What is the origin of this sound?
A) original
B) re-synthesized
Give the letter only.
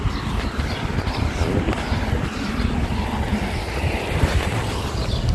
A